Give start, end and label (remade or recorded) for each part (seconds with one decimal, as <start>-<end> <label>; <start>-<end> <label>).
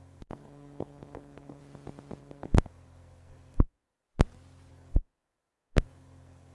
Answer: 0.0-1.6 remade; 1.6-2.2 recorded; 2.2-4.1 remade; 4.1-4.7 recorded; 4.7-6.5 remade